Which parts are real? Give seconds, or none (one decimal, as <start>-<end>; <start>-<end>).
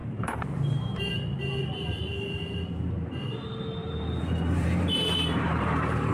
1.1-3.8